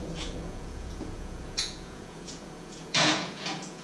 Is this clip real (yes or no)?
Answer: no